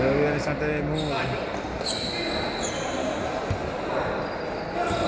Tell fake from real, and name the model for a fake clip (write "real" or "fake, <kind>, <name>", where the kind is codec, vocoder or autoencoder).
real